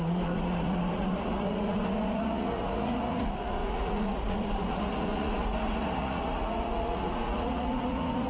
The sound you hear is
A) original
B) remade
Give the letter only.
B